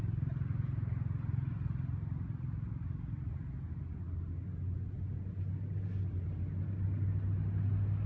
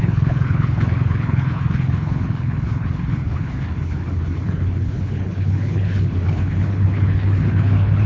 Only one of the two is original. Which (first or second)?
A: first